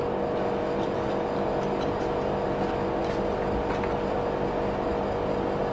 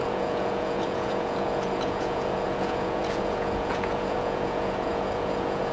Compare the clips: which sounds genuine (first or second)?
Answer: first